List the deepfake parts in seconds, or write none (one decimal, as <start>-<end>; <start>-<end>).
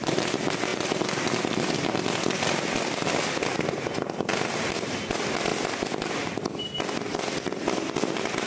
none